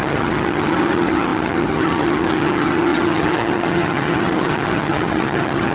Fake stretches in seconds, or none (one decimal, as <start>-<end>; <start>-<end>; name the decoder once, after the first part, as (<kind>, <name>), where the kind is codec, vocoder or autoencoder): 0.0-5.7 (vocoder, HiFi-GAN)